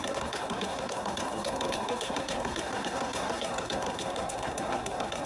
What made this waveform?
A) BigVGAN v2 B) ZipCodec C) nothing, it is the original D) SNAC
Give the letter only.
D